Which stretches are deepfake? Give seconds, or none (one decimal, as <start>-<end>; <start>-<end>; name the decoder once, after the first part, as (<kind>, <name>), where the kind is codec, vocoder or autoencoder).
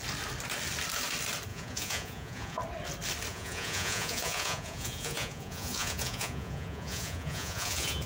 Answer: 1.5-2.6 (vocoder, Vocos); 3.3-8.1